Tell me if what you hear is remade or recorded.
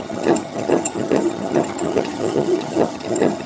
remade